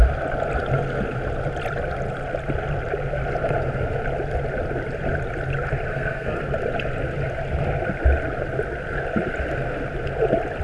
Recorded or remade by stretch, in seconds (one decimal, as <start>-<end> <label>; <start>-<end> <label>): 0.0-5.9 recorded; 5.9-6.4 remade; 6.4-10.6 recorded